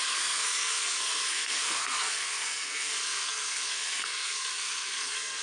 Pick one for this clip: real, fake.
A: fake